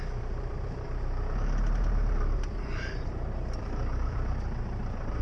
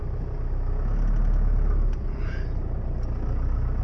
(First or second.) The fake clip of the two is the first